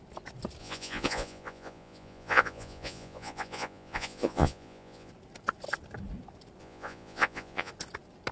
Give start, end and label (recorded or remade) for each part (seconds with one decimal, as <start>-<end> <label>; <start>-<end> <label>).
0.0-0.6 recorded; 0.6-5.1 remade; 5.1-6.6 recorded; 6.6-7.7 remade; 7.7-8.3 recorded